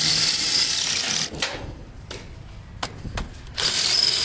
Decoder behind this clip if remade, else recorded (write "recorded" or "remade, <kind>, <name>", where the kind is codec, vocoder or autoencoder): recorded